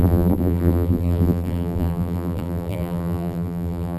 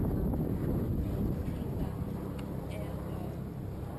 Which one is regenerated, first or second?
first